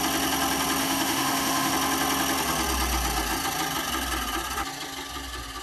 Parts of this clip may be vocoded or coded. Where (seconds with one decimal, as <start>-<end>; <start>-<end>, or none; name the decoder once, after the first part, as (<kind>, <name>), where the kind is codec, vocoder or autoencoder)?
0.8-1.7 (autoencoder, DAC-VAE)